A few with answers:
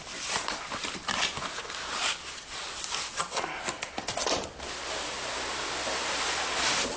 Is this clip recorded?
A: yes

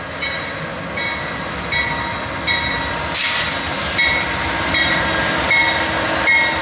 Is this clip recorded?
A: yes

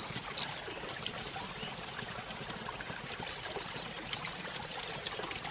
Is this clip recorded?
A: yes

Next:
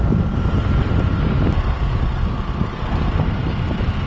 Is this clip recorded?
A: yes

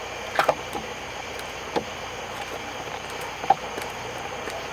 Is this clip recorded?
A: no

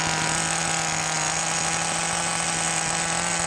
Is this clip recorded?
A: yes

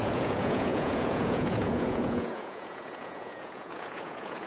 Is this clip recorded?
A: no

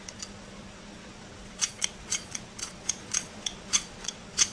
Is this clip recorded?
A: no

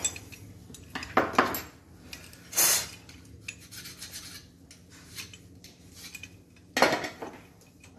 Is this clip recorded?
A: yes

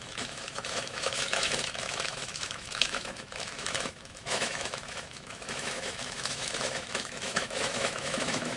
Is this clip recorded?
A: no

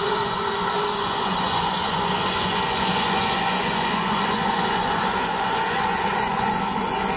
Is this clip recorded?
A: no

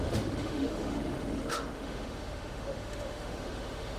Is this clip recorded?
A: no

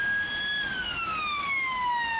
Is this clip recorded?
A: yes